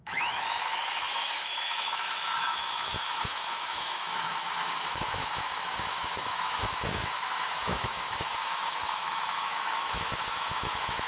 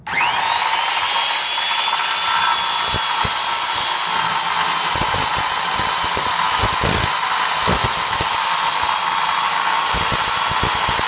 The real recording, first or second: second